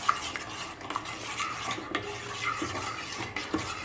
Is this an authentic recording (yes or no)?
yes